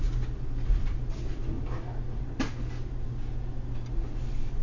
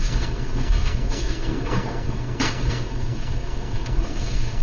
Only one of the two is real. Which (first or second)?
first